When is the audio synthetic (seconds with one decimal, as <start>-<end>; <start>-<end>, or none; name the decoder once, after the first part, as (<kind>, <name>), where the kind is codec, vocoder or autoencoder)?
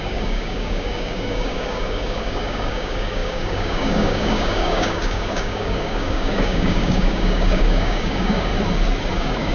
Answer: 0.0-8.5 (codec, DAC); 9.1-9.5